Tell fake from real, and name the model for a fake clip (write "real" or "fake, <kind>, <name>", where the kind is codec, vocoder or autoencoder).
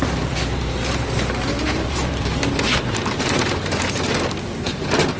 fake, vocoder, BigVGAN v2